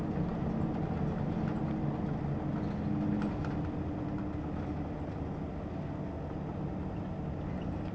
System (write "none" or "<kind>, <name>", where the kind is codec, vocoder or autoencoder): none